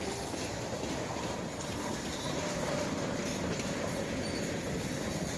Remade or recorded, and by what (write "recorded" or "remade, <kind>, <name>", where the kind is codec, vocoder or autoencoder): recorded